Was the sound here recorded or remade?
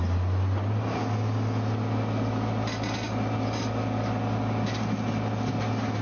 recorded